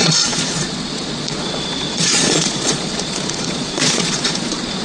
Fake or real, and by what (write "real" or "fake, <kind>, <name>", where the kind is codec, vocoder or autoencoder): fake, vocoder, Vocos